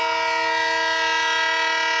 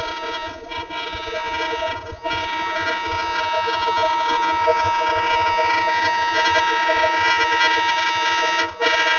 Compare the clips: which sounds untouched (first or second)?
first